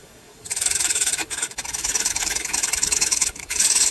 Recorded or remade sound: remade